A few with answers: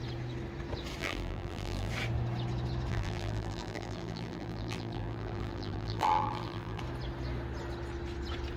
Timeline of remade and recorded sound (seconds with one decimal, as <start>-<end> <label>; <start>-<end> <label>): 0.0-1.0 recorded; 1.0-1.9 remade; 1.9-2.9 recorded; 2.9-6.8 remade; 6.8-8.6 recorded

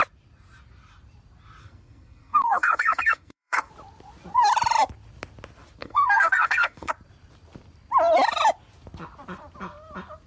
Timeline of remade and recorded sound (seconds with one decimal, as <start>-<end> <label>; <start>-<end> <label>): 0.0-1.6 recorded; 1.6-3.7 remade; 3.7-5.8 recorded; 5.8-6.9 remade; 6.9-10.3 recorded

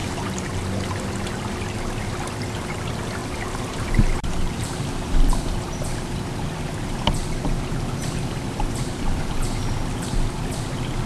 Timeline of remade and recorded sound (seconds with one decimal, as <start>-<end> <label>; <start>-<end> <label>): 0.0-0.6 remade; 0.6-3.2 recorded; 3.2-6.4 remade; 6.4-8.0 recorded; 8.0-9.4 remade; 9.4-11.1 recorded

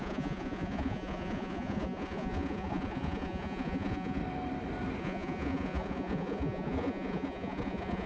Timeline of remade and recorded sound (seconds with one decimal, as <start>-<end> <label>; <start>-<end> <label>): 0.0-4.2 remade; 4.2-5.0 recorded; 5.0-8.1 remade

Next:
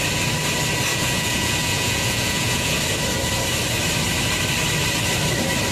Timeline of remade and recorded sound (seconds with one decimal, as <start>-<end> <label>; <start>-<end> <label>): 0.0-0.9 recorded; 0.9-2.8 remade; 2.8-5.7 recorded

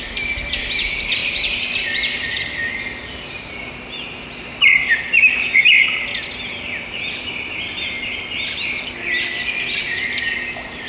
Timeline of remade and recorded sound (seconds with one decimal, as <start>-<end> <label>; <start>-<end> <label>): 0.0-1.2 recorded; 1.2-1.8 remade; 1.8-10.9 recorded